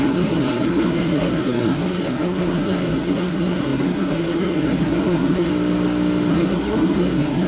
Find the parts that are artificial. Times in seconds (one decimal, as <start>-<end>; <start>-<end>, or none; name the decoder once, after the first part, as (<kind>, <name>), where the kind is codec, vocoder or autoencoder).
0.0-5.5 (codec, SNAC); 6.3-7.5